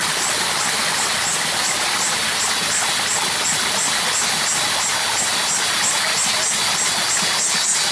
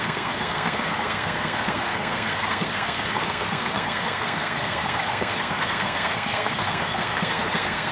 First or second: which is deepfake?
second